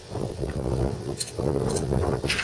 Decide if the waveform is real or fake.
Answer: fake